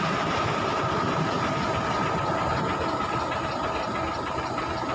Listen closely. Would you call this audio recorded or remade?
recorded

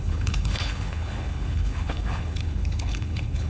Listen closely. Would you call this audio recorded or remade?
remade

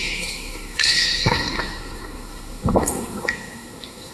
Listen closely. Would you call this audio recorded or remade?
remade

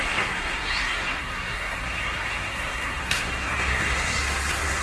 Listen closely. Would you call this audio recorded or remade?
remade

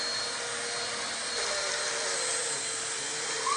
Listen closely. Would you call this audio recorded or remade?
recorded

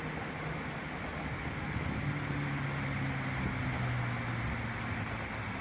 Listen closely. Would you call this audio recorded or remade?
recorded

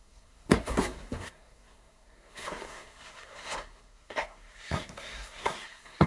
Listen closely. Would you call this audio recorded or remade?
remade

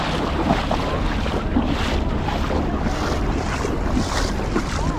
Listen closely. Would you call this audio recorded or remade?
recorded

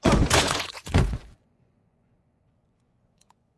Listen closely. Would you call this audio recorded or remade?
remade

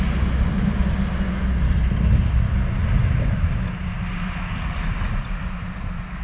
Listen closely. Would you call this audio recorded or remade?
recorded